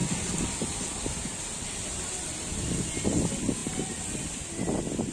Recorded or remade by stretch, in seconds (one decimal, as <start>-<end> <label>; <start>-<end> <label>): 0.0-5.1 recorded